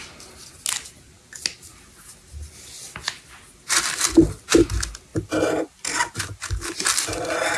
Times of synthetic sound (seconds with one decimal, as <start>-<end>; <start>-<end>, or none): none